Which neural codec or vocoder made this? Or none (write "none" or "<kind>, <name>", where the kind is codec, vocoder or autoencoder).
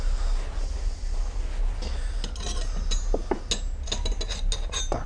none